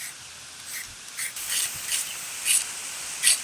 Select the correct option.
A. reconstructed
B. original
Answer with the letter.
B